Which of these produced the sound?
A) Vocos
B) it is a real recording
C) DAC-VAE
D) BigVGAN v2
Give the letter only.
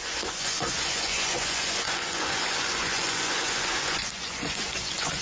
A